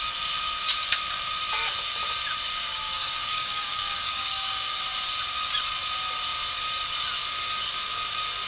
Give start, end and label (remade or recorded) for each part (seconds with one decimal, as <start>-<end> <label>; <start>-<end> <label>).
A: 0.0-2.5 recorded; 2.5-4.8 remade; 4.8-8.5 recorded

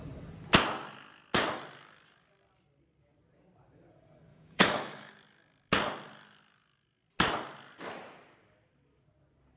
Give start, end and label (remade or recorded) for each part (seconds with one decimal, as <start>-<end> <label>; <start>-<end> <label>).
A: 0.0-4.3 recorded; 4.3-5.1 remade; 5.1-9.6 recorded

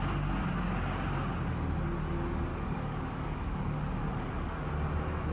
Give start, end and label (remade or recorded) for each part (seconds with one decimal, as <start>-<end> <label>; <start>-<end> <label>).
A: 0.0-2.5 recorded; 2.5-4.7 remade; 4.7-5.3 recorded

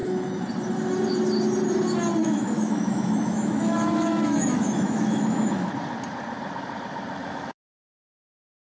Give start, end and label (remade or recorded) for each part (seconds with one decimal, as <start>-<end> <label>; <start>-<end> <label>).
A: 0.0-0.5 remade; 0.5-2.2 recorded; 2.2-5.7 remade; 5.7-7.2 recorded; 7.2-8.7 remade

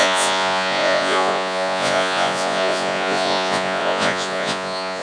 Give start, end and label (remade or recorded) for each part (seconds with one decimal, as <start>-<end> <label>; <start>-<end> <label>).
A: 0.0-5.0 remade